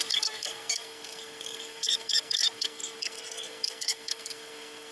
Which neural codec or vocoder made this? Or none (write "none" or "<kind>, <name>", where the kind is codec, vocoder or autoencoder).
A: codec, SNAC